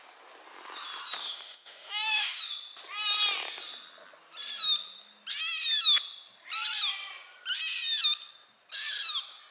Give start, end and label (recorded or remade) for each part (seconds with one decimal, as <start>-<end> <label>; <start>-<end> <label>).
0.0-1.2 recorded; 1.2-2.4 remade; 2.4-9.5 recorded